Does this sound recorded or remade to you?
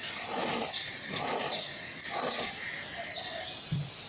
recorded